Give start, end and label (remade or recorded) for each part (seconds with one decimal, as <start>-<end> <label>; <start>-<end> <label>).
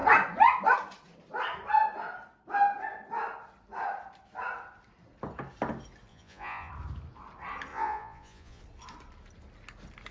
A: 0.0-6.1 recorded; 6.1-6.7 remade; 6.7-7.7 recorded; 7.7-8.6 remade; 8.6-10.1 recorded